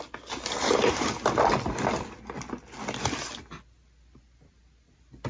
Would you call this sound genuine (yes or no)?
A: yes